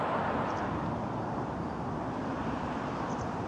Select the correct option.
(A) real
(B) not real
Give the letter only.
A